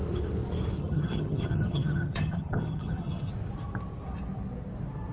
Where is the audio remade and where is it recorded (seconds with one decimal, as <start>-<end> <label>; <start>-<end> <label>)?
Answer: 0.0-0.8 recorded; 0.8-3.3 remade; 3.3-5.1 recorded